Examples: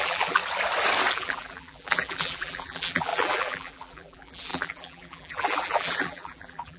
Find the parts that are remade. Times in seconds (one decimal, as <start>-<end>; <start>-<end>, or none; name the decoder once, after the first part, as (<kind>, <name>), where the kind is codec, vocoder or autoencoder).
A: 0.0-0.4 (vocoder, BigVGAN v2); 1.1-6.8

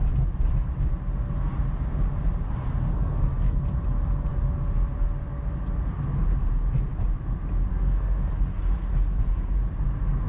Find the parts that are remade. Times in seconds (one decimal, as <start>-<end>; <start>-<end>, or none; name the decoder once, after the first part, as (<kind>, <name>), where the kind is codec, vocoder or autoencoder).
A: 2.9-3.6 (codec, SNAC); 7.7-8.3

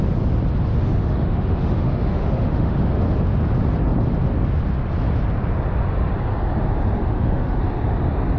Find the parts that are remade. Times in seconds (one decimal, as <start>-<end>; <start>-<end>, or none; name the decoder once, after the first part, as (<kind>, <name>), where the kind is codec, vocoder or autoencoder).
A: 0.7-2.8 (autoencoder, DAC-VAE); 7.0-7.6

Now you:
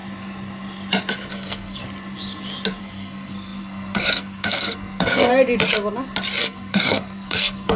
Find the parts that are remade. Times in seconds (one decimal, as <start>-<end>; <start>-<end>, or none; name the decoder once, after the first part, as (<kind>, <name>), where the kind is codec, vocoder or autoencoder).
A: 1.3-1.8 (codec, SNAC); 2.8-5.3; 6.4-7.8